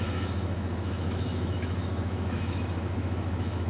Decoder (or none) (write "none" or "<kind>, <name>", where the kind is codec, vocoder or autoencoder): autoencoder, DAC-VAE